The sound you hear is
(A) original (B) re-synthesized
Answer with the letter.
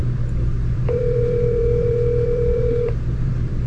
B